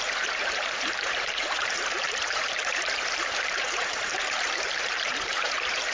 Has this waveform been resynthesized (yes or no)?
yes